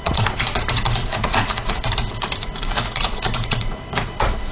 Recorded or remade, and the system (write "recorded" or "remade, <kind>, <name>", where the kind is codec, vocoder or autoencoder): remade, vocoder, Vocos